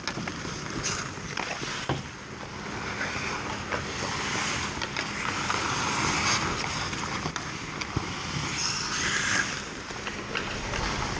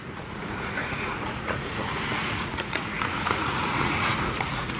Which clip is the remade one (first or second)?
second